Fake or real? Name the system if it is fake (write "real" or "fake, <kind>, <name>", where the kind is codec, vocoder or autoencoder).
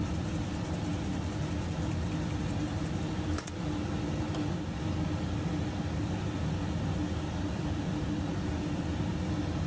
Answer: real